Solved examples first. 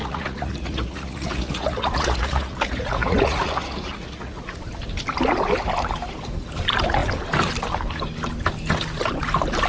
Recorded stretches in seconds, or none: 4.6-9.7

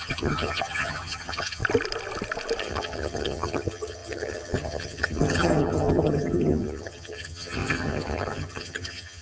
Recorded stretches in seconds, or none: 1.6-2.6